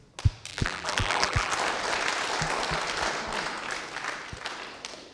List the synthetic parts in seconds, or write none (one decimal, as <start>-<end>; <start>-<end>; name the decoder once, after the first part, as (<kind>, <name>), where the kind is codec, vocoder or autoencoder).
0.5-1.5 (vocoder, BigVGAN v2)